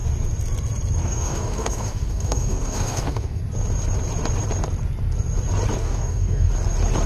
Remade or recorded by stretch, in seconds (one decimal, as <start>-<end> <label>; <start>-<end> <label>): 0.0-1.0 recorded; 1.0-3.4 remade; 3.4-5.8 recorded; 5.8-6.5 remade; 6.5-7.1 recorded